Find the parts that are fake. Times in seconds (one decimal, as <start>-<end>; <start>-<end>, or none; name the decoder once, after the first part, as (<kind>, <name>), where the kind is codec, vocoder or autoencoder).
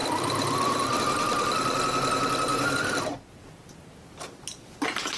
0.0-1.0 (vocoder, BigVGAN v2); 2.5-4.2